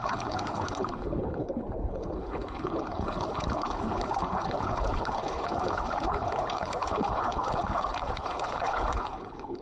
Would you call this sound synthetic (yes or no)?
yes